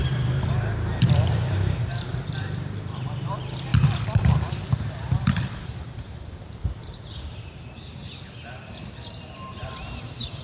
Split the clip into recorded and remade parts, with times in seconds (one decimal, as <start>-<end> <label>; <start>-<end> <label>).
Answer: 0.0-3.7 remade; 3.7-5.4 recorded; 5.4-10.4 remade